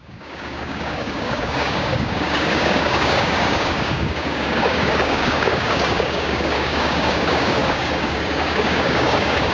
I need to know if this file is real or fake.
fake